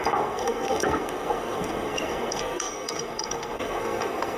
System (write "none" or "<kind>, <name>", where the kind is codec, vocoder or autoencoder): codec, SNAC